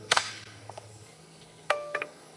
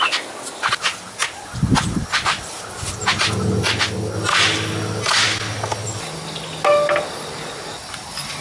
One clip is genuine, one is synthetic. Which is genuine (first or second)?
second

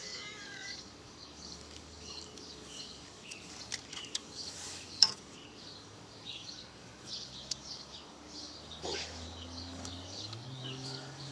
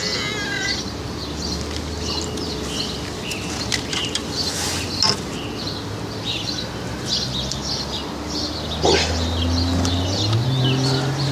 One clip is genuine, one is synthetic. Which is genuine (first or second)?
second